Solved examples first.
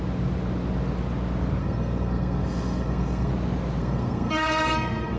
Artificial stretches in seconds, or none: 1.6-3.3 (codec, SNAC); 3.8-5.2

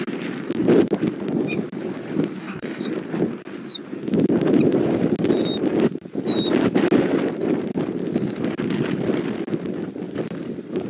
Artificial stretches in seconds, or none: 2.4-2.9 (codec, DAC)

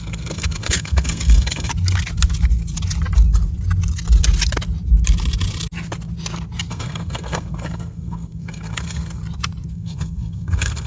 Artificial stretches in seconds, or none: 0.0-1.7 (codec, SNAC); 6.7-9.2; 9.7-10.9